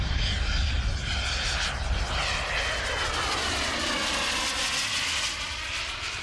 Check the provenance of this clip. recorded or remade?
recorded